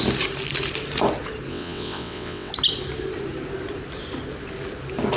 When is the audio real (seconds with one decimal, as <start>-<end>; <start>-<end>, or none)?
0.0-1.5; 2.5-5.2